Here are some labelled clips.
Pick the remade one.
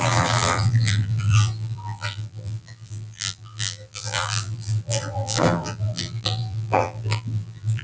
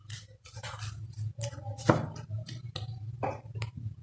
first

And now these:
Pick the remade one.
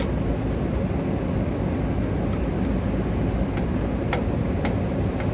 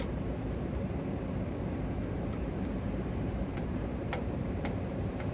second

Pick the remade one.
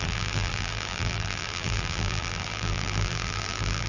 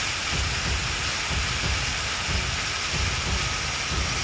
first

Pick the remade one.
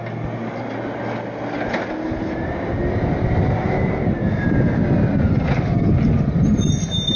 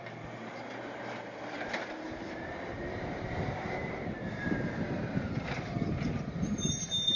second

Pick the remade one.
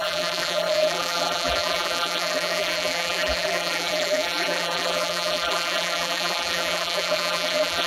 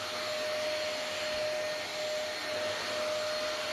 first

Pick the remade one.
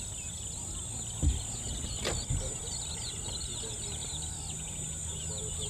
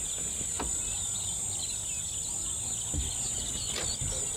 first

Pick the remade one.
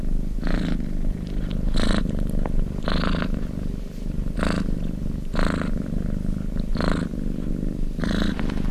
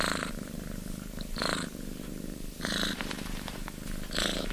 second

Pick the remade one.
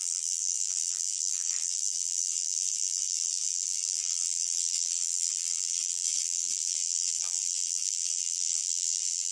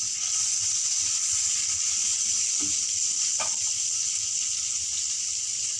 first